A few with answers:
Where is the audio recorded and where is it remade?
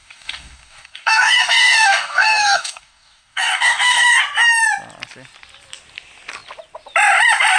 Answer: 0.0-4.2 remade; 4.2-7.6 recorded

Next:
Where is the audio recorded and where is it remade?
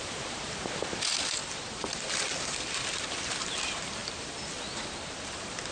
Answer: 0.0-1.4 recorded; 1.4-3.0 remade; 3.0-4.0 recorded; 4.0-4.5 remade; 4.5-5.7 recorded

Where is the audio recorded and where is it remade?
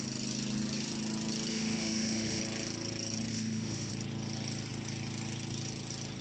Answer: 0.0-1.5 recorded; 1.5-2.4 remade; 2.4-3.3 recorded; 3.3-3.9 remade; 3.9-6.2 recorded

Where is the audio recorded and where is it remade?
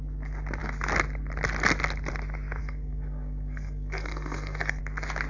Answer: 0.0-2.6 recorded; 2.6-4.8 remade; 4.8-5.3 recorded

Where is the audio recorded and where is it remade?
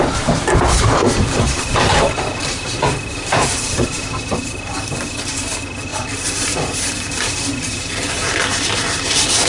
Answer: 0.0-9.5 recorded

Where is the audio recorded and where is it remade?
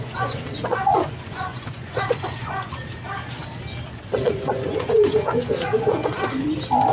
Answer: 0.0-2.7 remade; 2.7-4.0 recorded; 4.0-6.0 remade; 6.0-6.9 recorded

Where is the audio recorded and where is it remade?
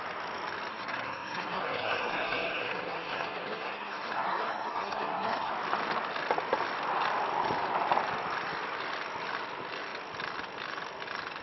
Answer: 0.0-0.7 recorded; 0.7-5.5 remade; 5.5-11.4 recorded